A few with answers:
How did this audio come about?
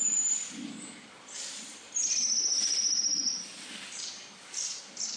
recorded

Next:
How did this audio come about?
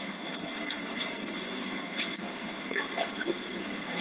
remade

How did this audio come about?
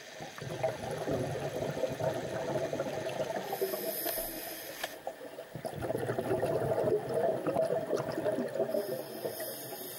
recorded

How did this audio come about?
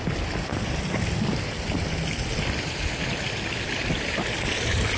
recorded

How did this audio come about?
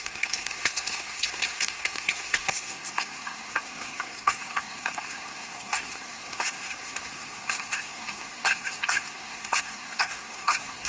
remade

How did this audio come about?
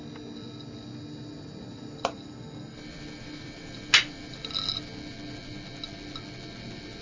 recorded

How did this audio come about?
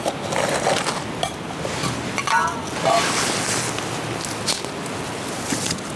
recorded